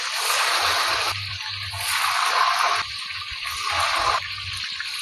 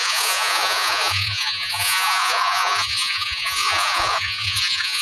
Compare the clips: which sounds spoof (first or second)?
second